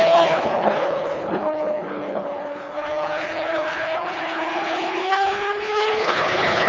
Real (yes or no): no